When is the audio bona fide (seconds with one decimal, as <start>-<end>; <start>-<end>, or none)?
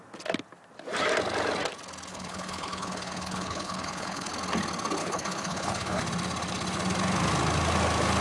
0.0-2.1; 4.3-5.0; 6.0-8.2